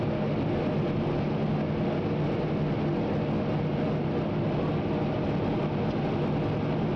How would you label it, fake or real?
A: real